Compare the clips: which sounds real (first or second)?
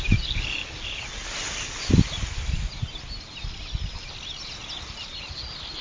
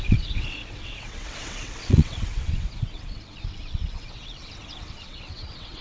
first